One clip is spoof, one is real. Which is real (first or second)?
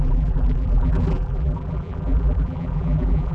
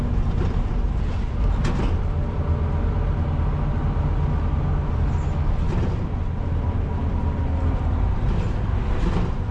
second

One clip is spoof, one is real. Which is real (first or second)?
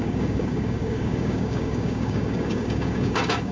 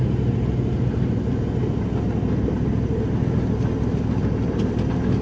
second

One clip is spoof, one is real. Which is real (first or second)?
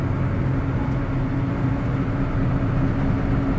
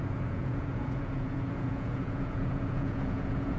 first